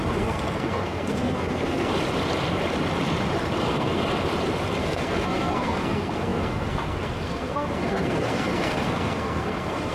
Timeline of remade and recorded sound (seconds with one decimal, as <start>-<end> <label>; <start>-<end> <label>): 0.0-1.9 remade; 1.9-3.6 recorded; 3.6-4.0 remade; 4.0-4.8 recorded; 4.8-9.9 remade